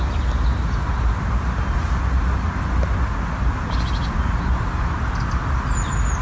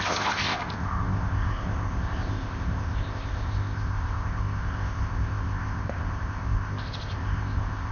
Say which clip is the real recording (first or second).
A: first